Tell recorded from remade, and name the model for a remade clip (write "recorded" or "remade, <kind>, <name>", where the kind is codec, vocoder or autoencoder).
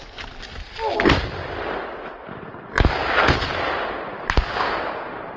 recorded